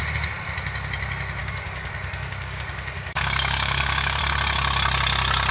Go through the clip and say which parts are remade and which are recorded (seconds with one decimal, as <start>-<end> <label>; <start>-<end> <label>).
0.0-1.4 recorded; 1.4-4.2 remade; 4.2-5.5 recorded